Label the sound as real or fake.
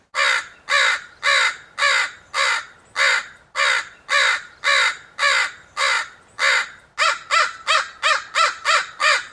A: real